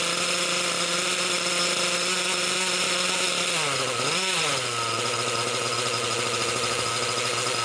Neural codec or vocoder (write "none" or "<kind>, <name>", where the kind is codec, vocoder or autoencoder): none